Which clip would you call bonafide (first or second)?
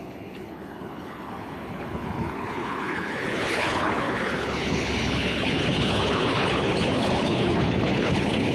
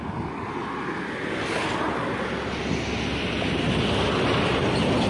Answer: second